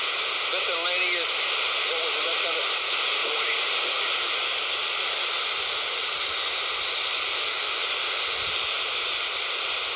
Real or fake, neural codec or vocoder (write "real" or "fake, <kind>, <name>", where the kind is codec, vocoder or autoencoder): real